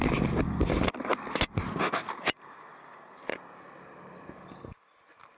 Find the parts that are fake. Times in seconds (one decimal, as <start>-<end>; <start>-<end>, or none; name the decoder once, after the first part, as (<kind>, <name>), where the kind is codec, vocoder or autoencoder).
none